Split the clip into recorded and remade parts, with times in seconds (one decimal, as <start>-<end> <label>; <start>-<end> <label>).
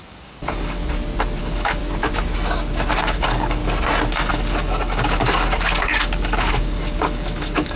0.0-0.8 remade; 0.8-1.4 recorded; 1.4-1.8 remade; 1.8-3.0 recorded; 3.0-3.6 remade; 3.6-4.3 recorded; 4.3-7.8 remade